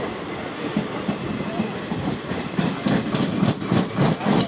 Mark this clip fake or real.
real